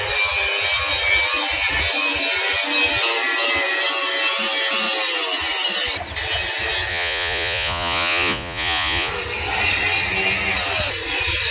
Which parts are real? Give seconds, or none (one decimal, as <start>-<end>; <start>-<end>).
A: 0.0-6.9; 9.1-11.5